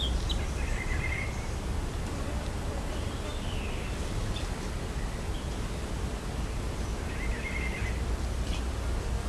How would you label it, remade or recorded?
remade